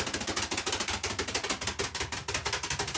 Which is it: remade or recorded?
recorded